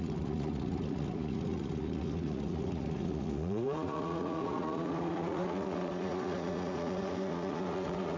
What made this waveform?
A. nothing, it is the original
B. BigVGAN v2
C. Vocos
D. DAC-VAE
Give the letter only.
C